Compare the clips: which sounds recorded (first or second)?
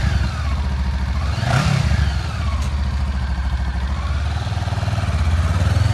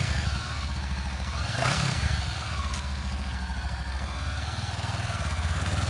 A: first